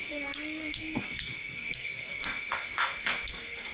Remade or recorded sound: remade